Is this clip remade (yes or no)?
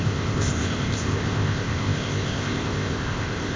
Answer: yes